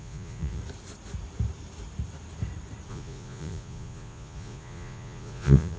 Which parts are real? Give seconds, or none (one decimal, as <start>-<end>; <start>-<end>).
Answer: 0.6-2.9